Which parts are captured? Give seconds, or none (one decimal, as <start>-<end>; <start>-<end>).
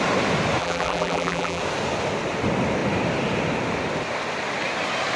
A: 0.0-0.6; 1.6-5.2